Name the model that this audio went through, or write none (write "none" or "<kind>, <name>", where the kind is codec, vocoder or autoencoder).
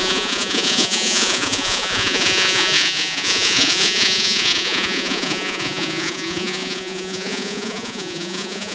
vocoder, Vocos